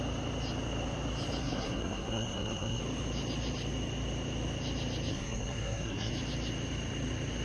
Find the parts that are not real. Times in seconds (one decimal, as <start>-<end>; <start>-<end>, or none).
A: 1.4-2.8; 5.1-6.1